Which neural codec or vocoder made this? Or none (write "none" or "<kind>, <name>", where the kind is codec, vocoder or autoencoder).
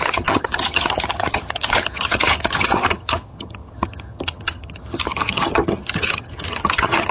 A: vocoder, HiFi-GAN